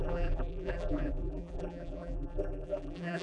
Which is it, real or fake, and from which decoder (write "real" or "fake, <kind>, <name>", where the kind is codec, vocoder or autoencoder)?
fake, vocoder, BigVGAN v2